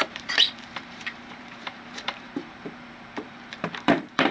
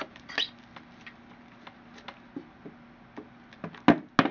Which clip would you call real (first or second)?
second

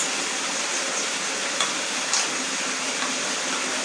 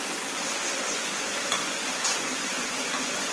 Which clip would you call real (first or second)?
first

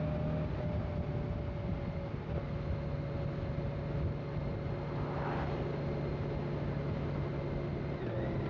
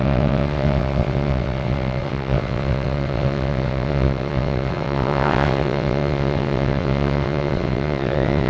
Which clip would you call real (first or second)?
first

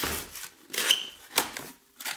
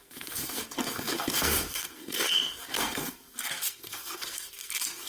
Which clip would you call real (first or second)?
first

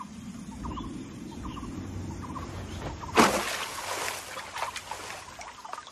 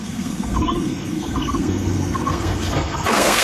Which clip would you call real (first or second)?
first